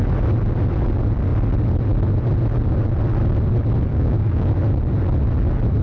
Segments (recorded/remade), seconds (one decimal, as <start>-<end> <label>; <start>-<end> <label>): 0.0-3.9 recorded; 3.9-4.5 remade; 4.5-5.8 recorded

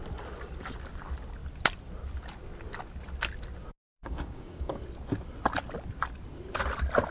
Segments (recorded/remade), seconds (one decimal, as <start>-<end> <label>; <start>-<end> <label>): 0.0-3.9 recorded; 3.9-4.8 remade; 4.8-7.1 recorded

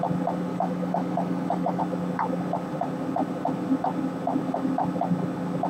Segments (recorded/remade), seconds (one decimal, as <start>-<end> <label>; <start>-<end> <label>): 0.0-0.5 recorded; 0.5-1.8 remade; 1.8-5.7 recorded

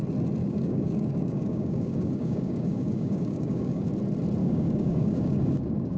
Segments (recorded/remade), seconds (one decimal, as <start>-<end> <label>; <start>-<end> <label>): 0.0-0.4 recorded; 0.4-3.9 remade; 3.9-4.4 recorded; 4.4-6.0 remade